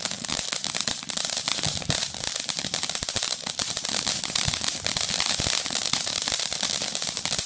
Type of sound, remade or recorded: remade